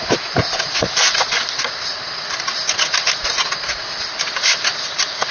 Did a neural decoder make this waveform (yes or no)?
no